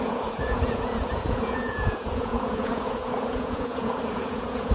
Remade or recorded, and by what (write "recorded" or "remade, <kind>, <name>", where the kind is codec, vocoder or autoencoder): remade, vocoder, Vocos